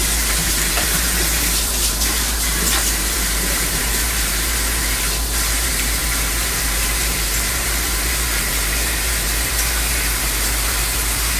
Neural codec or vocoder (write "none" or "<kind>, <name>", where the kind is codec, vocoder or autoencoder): vocoder, BigVGAN v2